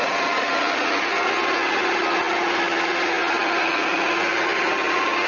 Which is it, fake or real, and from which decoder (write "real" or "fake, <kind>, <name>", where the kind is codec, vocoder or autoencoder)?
real